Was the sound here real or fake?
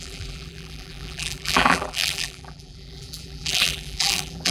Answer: fake